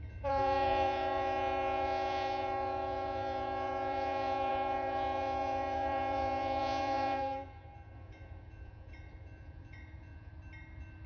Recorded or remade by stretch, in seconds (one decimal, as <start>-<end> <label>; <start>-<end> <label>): 0.0-10.3 remade; 10.3-11.1 recorded

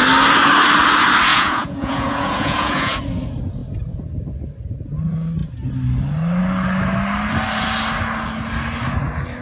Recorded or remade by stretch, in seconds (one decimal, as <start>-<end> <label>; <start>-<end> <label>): 0.0-1.3 recorded; 1.3-3.0 remade; 3.0-9.4 recorded

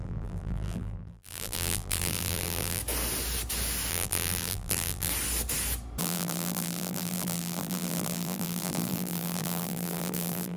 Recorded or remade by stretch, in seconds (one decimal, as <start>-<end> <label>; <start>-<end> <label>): 0.0-2.8 remade; 2.8-3.9 recorded; 3.9-5.1 remade; 5.1-6.0 recorded; 6.0-10.6 remade